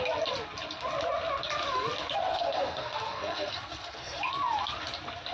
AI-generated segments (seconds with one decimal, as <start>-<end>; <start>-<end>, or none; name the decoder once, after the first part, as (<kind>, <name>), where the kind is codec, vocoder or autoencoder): 2.3-4.2 (codec, SNAC)